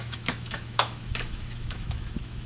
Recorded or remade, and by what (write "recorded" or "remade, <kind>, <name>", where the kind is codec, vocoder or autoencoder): remade, autoencoder, DAC-VAE